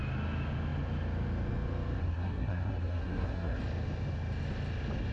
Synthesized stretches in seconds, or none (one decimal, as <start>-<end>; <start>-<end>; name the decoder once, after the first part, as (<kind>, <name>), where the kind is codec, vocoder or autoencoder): 2.0-3.6 (codec, SNAC)